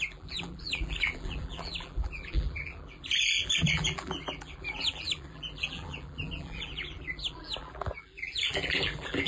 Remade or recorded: remade